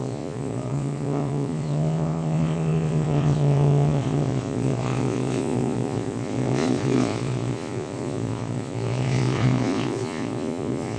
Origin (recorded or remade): remade